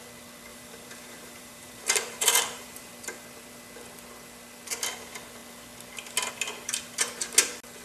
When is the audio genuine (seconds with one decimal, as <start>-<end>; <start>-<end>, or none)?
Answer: 0.0-0.5; 2.9-7.8